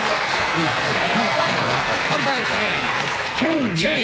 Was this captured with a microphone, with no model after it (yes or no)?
no